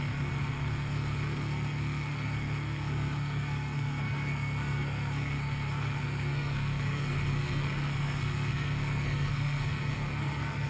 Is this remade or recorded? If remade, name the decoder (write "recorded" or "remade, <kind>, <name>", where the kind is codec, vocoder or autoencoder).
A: remade, codec, SNAC